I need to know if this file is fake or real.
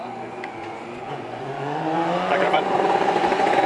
fake